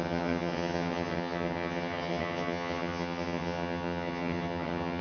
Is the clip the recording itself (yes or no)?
no